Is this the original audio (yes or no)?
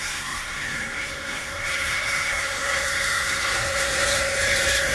no